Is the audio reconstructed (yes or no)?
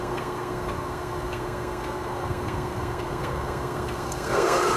yes